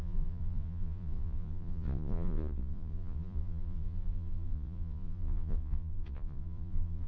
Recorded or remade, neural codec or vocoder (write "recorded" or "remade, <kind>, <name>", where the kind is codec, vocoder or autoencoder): remade, vocoder, Vocos